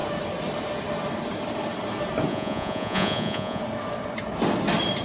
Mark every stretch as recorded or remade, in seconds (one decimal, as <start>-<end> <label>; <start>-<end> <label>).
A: 0.0-2.3 recorded; 2.3-3.6 remade; 3.6-5.0 recorded